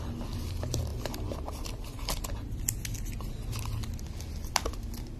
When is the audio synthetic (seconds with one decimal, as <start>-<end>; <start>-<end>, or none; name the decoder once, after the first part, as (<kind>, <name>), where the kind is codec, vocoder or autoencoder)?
none